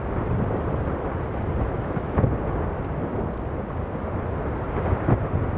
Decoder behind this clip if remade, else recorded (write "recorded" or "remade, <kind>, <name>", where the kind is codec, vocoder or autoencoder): recorded